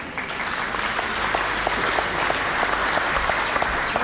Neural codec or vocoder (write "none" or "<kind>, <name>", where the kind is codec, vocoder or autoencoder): none